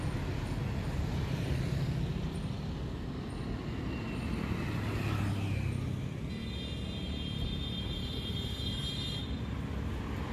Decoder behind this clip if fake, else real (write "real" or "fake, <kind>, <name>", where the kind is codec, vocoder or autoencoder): real